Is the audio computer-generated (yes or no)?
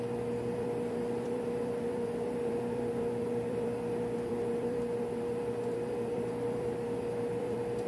yes